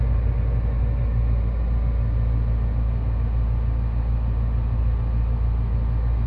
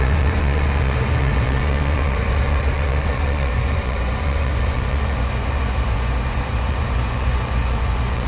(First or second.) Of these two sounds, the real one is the first